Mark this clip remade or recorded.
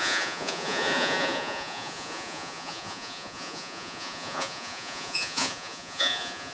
remade